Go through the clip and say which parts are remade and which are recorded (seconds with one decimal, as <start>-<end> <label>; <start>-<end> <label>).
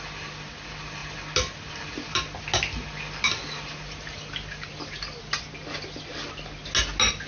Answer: 0.0-7.3 recorded